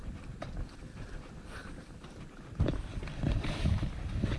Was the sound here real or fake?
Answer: real